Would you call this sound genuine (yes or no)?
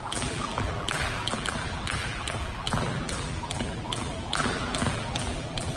no